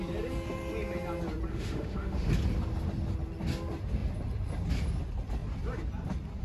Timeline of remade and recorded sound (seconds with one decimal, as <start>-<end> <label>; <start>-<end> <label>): 0.0-1.5 recorded; 1.5-2.3 remade; 2.3-6.4 recorded